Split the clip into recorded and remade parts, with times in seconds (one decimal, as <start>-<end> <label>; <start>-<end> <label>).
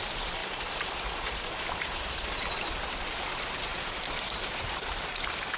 0.0-5.6 recorded